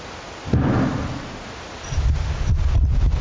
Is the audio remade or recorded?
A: recorded